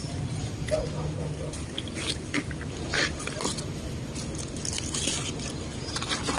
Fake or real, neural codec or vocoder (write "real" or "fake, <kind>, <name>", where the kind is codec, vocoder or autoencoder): real